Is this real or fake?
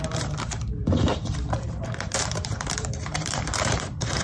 fake